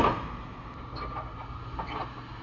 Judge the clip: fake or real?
real